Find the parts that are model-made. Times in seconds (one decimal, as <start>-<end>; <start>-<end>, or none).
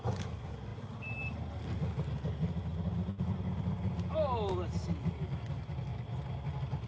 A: none